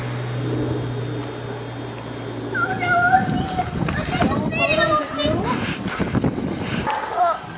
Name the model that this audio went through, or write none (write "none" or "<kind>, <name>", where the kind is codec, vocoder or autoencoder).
none